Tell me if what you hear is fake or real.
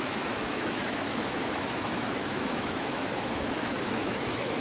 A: fake